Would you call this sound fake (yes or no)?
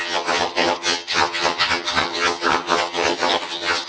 yes